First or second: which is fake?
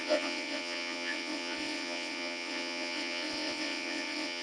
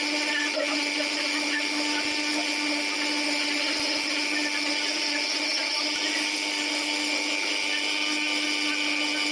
first